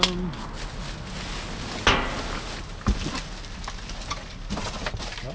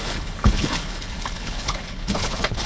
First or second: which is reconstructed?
second